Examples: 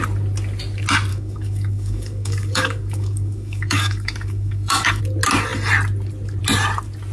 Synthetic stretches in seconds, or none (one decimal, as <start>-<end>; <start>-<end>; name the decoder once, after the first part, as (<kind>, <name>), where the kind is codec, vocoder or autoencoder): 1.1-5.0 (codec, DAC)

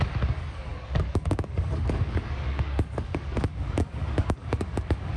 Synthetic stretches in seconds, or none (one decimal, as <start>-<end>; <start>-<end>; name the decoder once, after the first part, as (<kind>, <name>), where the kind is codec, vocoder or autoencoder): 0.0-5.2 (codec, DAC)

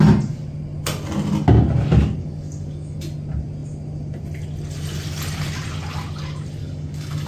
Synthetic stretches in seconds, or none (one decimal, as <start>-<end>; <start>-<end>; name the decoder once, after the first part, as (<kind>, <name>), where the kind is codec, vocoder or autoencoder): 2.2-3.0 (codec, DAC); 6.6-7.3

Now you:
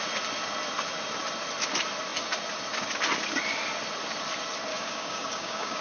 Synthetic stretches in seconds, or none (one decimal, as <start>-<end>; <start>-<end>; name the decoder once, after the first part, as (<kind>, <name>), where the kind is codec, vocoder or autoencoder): 4.7-5.8 (codec, DAC)

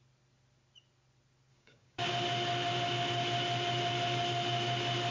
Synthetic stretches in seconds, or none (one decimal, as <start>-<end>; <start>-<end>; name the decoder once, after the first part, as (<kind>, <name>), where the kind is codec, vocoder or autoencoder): 1.5-2.1 (codec, DAC)

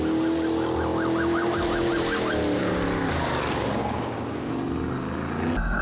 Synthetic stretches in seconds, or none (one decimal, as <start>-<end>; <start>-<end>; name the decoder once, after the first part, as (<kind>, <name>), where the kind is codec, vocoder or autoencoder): 3.8-4.5 (codec, DAC)

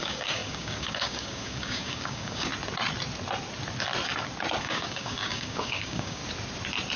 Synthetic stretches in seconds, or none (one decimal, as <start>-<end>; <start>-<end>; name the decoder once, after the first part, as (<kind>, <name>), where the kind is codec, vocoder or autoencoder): 0.0-2.5 (codec, DAC); 4.6-6.2

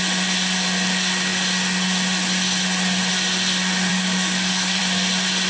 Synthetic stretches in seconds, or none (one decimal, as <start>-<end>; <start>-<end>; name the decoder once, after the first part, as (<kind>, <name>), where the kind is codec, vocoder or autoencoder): 3.9-4.8 (codec, DAC)